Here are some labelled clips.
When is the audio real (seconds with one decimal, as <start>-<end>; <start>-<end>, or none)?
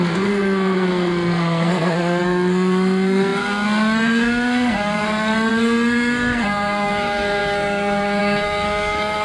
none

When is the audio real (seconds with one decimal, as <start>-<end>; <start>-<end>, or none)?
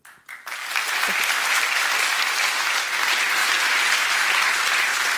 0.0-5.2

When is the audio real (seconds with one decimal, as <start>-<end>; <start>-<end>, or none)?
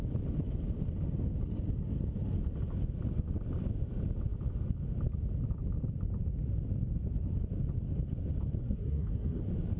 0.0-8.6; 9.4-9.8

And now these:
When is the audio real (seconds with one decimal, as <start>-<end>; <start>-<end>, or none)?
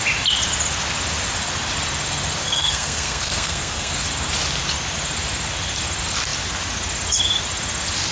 0.0-2.4; 3.9-8.1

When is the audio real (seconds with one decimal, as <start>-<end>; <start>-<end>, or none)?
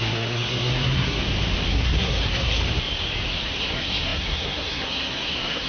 1.2-1.7; 2.6-3.6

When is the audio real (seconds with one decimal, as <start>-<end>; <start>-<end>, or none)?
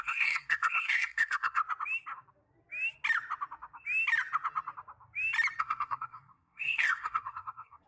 1.6-5.6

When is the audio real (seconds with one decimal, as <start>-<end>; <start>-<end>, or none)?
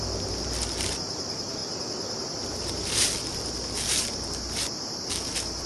0.0-5.7